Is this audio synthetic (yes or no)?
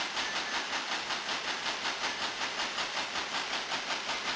no